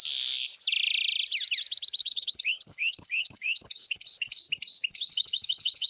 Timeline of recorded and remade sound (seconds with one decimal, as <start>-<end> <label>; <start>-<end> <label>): 0.0-2.0 recorded; 2.0-4.4 remade; 4.4-4.9 recorded; 4.9-5.9 remade